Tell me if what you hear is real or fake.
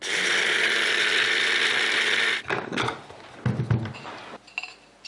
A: real